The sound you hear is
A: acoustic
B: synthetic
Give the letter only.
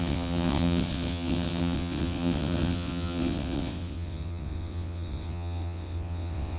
B